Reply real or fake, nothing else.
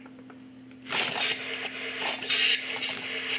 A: real